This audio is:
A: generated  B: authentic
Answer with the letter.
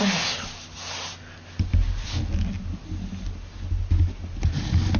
B